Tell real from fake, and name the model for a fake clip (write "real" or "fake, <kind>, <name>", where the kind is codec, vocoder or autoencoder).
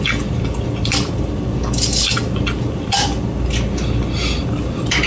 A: real